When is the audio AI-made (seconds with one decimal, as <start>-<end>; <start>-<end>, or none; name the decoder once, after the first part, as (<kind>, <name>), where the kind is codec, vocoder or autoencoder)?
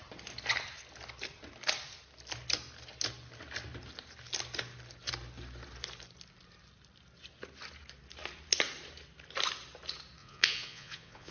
10.2-11.3 (vocoder, Vocos)